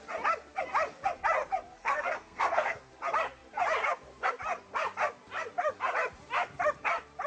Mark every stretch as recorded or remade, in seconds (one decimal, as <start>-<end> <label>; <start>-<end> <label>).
0.0-1.8 recorded; 1.8-2.9 remade; 2.9-7.3 recorded